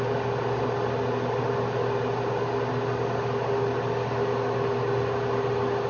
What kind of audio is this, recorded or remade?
recorded